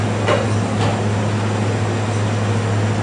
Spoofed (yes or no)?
no